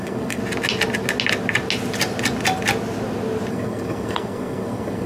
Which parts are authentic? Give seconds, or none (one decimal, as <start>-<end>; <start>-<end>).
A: 0.4-3.5